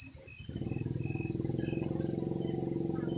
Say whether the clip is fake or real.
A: real